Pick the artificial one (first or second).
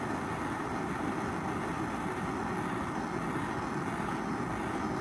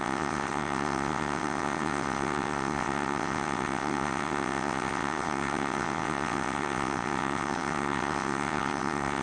second